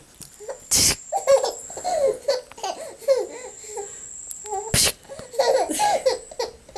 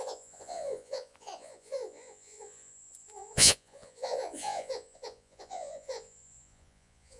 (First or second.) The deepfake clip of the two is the second